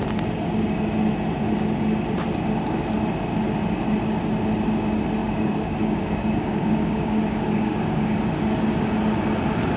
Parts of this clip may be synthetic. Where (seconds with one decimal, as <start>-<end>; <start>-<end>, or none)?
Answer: 5.2-8.2